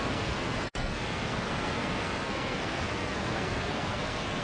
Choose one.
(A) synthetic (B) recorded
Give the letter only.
A